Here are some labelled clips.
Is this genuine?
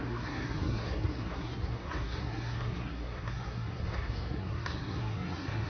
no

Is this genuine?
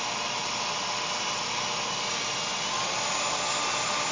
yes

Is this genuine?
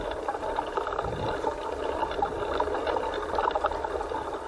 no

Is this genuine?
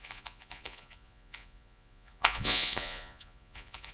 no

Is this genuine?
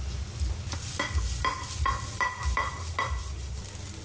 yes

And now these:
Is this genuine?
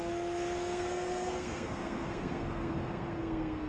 no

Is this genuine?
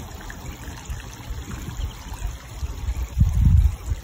yes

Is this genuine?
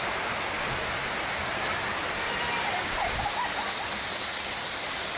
yes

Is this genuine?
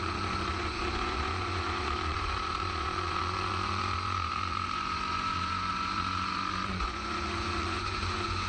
no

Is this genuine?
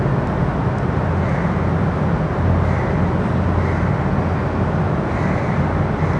yes